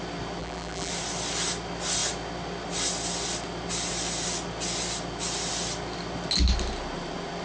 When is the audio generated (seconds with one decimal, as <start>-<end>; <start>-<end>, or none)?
0.4-0.9